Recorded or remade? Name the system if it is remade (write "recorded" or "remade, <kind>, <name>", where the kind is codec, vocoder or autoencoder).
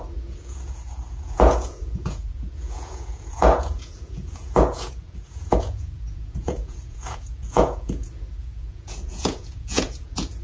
remade, vocoder, Vocos